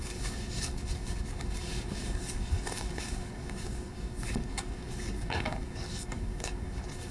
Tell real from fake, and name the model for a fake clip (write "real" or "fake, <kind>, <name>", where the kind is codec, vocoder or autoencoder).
fake, codec, DAC